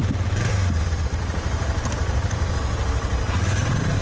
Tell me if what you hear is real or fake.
real